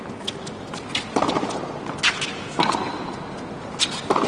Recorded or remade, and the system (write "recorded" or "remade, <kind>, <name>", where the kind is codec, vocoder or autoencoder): recorded